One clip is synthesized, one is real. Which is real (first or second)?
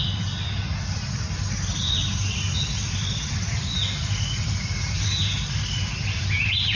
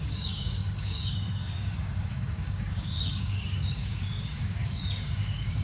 first